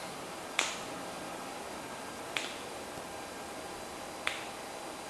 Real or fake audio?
real